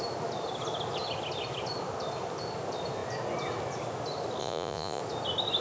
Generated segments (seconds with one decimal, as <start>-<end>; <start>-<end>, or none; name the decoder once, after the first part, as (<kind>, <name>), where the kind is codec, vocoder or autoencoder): 4.4-5.0 (vocoder, Vocos)